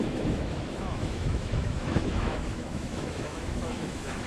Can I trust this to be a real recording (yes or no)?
no